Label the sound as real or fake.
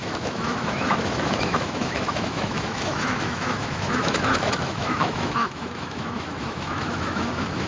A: fake